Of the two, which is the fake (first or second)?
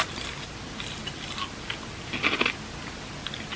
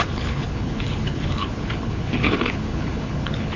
second